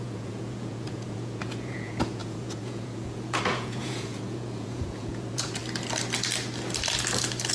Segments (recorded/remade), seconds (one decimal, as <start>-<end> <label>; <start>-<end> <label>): 0.0-5.6 remade; 5.6-7.5 recorded